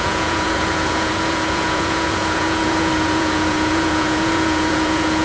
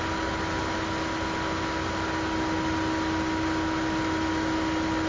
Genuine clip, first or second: second